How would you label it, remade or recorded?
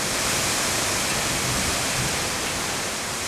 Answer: recorded